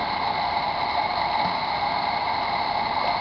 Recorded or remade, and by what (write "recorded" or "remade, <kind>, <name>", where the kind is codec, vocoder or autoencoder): recorded